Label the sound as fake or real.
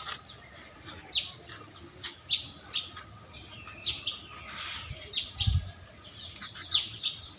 real